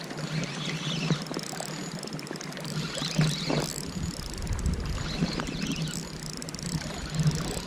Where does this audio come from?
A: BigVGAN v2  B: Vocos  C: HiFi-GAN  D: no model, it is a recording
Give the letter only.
D